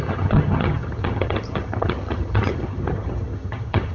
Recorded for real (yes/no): no